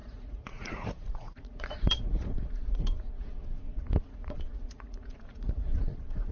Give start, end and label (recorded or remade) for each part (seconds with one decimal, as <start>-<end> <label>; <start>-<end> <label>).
0.0-6.3 remade